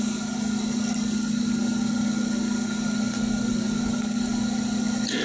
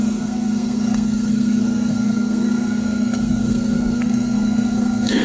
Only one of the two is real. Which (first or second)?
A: first